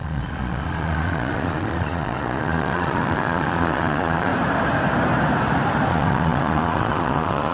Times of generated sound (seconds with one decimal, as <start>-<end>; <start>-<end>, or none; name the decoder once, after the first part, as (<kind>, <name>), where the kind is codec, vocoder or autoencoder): 0.0-4.3 (vocoder, Vocos); 5.9-7.5